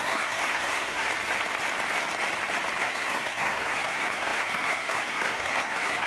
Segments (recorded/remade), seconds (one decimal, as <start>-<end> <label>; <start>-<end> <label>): 0.0-1.1 remade; 1.1-2.8 recorded; 2.8-6.1 remade